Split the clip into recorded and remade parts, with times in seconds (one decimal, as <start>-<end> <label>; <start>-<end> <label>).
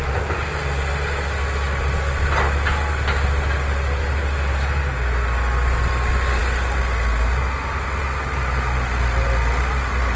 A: 0.0-10.2 recorded